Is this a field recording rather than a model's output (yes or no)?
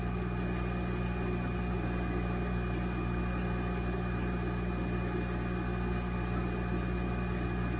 yes